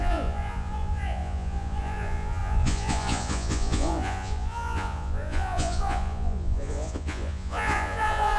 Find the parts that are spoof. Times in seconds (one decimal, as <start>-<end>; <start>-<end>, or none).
0.0-8.4

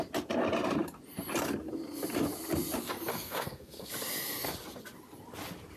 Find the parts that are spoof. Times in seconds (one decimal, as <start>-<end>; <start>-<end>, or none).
3.1-3.9

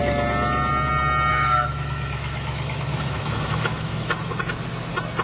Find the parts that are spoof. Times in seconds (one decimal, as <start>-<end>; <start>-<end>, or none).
1.3-4.4

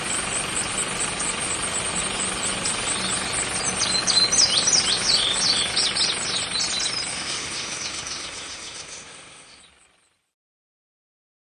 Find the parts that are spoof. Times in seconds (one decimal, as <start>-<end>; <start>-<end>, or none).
7.1-9.6

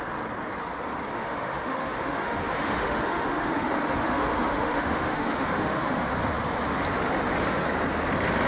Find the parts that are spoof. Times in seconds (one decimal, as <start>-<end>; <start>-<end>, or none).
1.1-6.2